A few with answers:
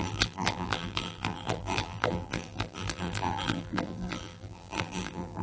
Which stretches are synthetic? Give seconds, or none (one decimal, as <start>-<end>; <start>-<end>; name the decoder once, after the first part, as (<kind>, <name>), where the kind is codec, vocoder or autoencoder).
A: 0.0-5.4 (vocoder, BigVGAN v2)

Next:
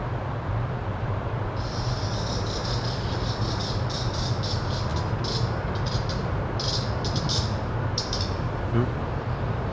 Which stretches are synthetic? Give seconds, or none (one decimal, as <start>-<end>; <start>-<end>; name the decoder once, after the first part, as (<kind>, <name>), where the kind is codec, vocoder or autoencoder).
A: 0.0-4.9 (vocoder, BigVGAN v2); 5.8-9.7

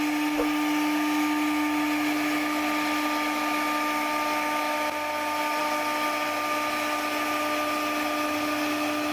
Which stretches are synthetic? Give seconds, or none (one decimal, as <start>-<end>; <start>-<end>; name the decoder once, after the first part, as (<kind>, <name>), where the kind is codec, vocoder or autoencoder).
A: none

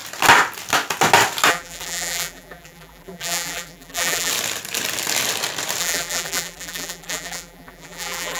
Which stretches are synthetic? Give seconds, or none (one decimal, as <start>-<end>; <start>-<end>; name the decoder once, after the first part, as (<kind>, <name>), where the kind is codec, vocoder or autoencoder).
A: 1.5-4.3 (vocoder, BigVGAN v2); 5.8-8.4

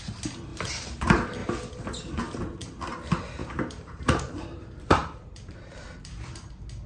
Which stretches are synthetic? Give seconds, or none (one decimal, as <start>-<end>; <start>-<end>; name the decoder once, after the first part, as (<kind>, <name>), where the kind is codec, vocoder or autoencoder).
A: 0.5-1.0 (vocoder, BigVGAN v2); 3.4-6.2